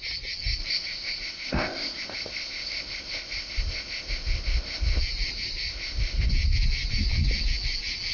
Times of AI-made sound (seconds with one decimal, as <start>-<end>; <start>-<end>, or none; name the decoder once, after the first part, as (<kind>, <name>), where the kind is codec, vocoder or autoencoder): 0.6-5.0 (codec, ZipCodec); 5.7-6.3